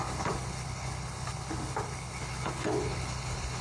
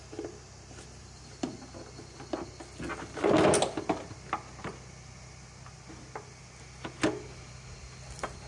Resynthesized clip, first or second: first